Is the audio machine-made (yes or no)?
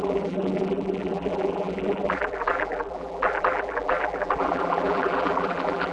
yes